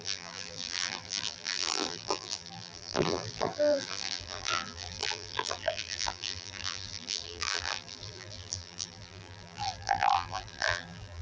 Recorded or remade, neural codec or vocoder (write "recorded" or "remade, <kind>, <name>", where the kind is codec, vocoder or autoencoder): remade, vocoder, BigVGAN v2